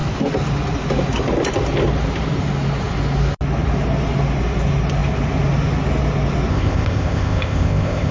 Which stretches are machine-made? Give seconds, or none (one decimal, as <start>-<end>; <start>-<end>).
6.5-8.1